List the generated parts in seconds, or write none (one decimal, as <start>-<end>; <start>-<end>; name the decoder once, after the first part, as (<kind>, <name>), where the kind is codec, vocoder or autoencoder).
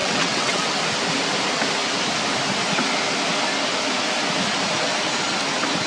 0.0-0.7 (vocoder, WaveNeXt)